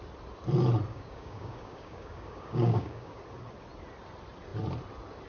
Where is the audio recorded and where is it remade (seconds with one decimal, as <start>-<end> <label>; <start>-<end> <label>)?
0.0-0.9 recorded; 0.9-3.2 remade; 3.2-5.3 recorded